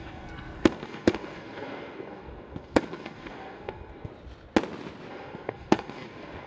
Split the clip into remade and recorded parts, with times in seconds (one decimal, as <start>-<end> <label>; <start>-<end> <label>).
0.0-4.1 remade; 4.1-5.1 recorded; 5.1-6.5 remade